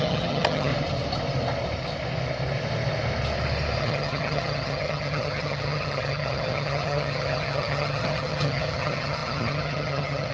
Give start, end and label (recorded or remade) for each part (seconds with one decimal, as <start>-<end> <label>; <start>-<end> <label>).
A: 0.0-0.7 remade; 0.7-3.8 recorded; 3.8-10.3 remade